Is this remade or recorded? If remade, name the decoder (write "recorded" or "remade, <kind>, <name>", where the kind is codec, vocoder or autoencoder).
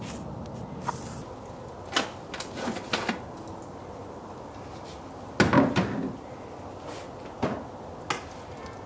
recorded